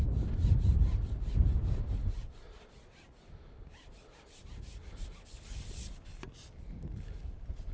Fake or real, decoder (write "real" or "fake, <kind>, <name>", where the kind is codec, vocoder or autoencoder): real